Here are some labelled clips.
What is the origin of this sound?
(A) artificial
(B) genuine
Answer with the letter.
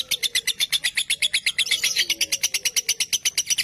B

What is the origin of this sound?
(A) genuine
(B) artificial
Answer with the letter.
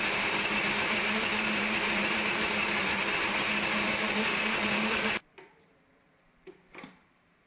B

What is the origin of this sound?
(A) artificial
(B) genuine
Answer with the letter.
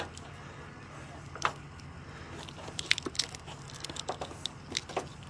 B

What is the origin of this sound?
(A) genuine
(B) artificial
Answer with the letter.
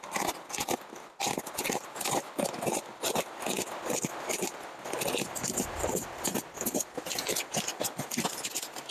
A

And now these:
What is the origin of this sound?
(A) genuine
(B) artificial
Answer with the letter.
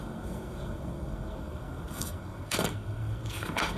B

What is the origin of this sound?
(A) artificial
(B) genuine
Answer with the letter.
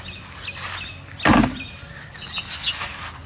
B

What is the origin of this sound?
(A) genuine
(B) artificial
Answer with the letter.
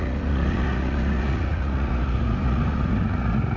B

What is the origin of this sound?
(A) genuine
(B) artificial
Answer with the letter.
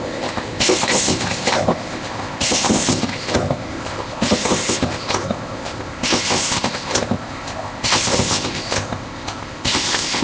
B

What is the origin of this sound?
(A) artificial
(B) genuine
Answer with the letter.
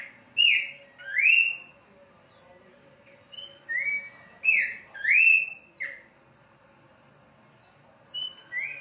B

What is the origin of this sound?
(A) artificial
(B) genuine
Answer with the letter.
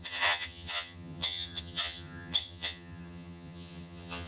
A